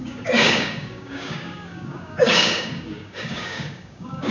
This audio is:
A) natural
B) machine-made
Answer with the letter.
B